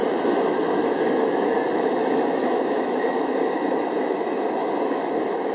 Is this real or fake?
fake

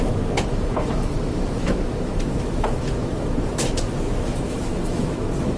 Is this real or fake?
fake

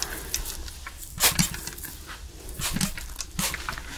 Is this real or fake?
real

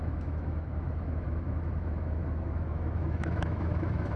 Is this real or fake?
fake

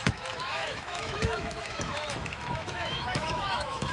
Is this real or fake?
fake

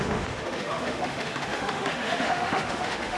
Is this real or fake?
fake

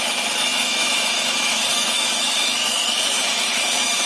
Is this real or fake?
fake